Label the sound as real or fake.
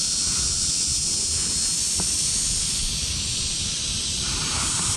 real